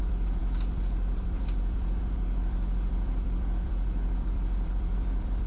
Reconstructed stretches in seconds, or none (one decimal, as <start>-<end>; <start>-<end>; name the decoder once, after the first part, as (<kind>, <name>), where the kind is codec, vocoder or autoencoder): 0.0-5.5 (vocoder, BigVGAN v2)